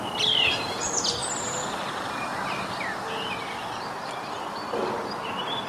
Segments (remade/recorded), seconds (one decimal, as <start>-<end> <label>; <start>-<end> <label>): 0.0-5.7 recorded